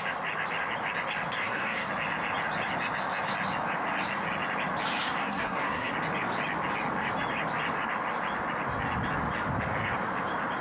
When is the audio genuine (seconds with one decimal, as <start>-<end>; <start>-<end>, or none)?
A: 0.0-1.4; 1.9-5.2; 5.9-10.6

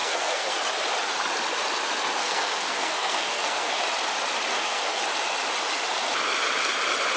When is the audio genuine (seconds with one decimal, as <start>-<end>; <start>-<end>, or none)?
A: 0.6-2.2; 3.8-4.5; 5.0-7.2

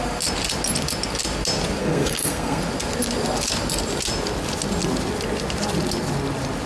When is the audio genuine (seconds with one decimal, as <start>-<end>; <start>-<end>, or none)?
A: 0.0-1.8; 2.6-6.7

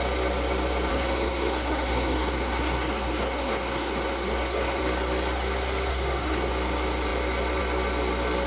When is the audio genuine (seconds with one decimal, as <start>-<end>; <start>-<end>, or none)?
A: 0.0-0.9; 4.8-5.9; 6.5-8.5

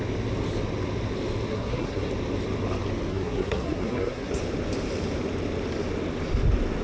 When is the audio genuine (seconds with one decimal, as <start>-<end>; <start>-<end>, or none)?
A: 0.0-1.5; 2.1-3.1; 4.3-6.8

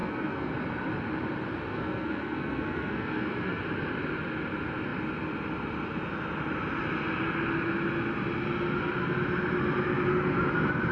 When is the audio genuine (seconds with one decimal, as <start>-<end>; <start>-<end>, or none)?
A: 0.5-1.7; 3.6-10.9

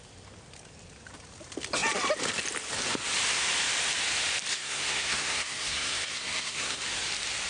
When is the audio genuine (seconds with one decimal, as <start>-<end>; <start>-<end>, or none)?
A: 0.0-4.5; 6.8-7.5